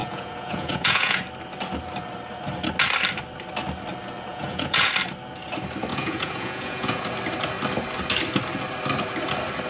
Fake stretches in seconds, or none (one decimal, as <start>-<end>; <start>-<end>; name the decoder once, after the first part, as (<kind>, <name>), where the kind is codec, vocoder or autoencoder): 0.0-1.2 (vocoder, Vocos); 4.3-4.9; 5.9-7.0